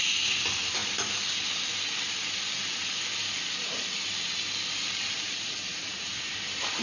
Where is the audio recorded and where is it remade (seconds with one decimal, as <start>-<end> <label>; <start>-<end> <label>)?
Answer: 0.0-5.7 recorded; 5.7-6.3 remade; 6.3-6.8 recorded